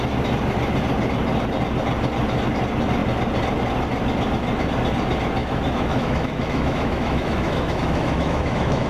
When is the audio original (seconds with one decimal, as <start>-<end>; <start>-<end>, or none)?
0.0-5.4